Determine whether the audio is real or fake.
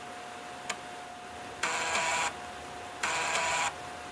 real